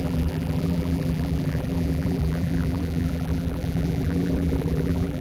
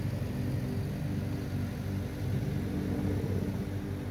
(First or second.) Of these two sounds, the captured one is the second